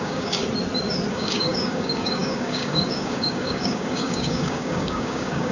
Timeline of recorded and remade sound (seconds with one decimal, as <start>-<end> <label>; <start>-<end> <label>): 0.0-0.4 remade; 0.4-1.1 recorded; 1.1-5.5 remade